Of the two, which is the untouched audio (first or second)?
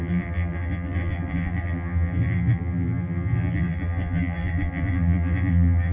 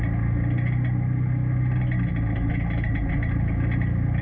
second